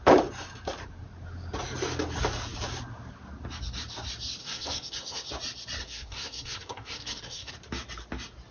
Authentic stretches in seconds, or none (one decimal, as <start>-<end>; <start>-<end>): 0.0-4.4; 5.3-5.8; 7.5-8.5